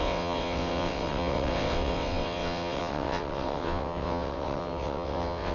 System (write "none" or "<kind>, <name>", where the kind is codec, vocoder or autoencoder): vocoder, WaveNeXt